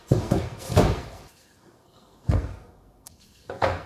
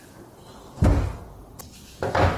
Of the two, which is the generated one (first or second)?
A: first